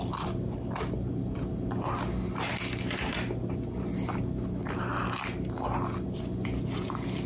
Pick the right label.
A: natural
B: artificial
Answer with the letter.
A